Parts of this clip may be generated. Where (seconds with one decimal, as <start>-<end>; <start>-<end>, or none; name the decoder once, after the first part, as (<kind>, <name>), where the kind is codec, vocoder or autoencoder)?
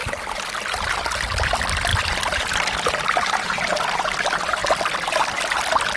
none